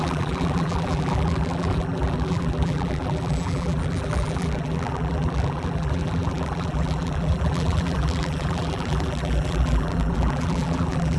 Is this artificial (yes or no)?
yes